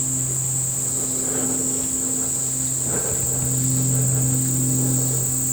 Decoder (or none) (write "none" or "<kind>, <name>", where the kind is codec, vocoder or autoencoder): none